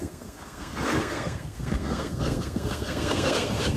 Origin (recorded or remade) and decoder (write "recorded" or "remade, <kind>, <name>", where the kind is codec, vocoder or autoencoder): remade, codec, SNAC